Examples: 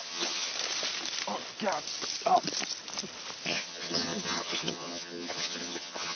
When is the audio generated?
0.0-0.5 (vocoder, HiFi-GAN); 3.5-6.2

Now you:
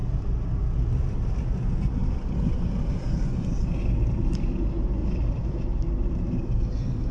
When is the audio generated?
2.0-3.6 (vocoder, BigVGAN v2); 5.0-5.6

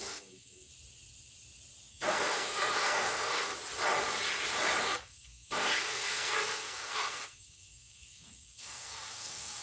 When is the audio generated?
0.0-0.7 (codec, SNAC); 1.9-3.5; 4.8-9.6

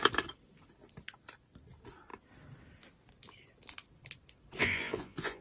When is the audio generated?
4.6-5.4 (vocoder, Vocos)

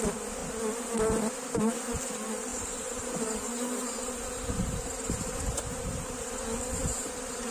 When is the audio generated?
2.5-6.3 (vocoder, BigVGAN v2); 6.8-7.5